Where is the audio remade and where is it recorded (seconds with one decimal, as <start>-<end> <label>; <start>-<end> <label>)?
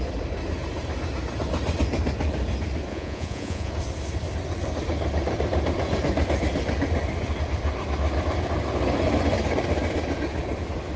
0.0-2.9 recorded; 2.9-3.7 remade; 3.7-11.0 recorded